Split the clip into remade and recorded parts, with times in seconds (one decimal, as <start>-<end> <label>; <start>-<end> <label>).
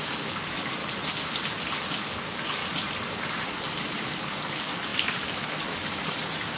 0.0-0.8 remade; 0.8-1.9 recorded; 1.9-2.6 remade; 2.6-4.0 recorded; 4.0-6.0 remade; 6.0-6.6 recorded